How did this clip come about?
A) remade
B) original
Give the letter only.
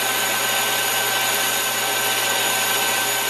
B